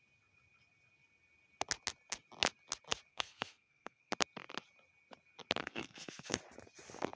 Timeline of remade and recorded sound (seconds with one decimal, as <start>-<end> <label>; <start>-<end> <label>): 0.0-3.1 recorded; 3.1-4.1 remade; 4.1-5.6 recorded; 5.6-6.4 remade; 6.4-7.2 recorded